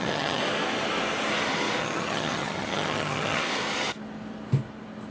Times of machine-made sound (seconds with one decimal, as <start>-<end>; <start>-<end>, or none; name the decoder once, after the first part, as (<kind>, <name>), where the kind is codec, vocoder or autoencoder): 0.0-0.4 (vocoder, HiFi-GAN); 1.8-3.4